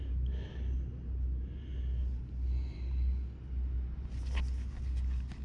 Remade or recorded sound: recorded